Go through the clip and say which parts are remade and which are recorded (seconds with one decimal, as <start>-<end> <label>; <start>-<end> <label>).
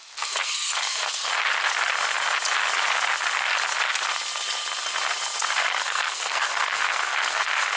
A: 0.0-1.3 remade; 1.3-5.6 recorded; 5.6-7.8 remade